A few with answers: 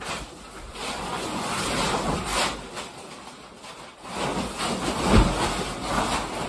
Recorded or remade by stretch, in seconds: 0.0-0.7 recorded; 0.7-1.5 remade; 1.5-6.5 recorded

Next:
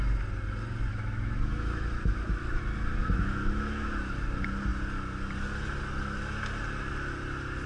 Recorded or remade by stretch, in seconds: 0.0-0.9 recorded; 0.9-2.6 remade; 2.6-3.0 recorded; 3.0-4.1 remade; 4.1-7.7 recorded

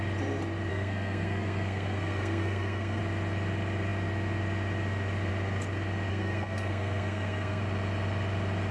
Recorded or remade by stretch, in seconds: 0.0-0.7 recorded; 0.7-3.0 remade; 3.0-6.1 recorded; 6.1-7.6 remade; 7.6-8.7 recorded